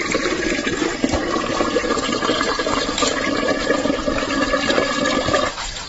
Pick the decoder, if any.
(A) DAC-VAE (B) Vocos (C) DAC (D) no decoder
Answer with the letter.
D